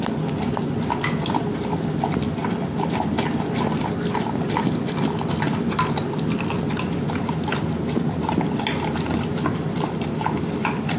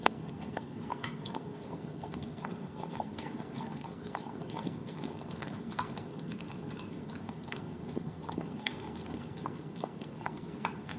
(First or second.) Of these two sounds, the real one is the first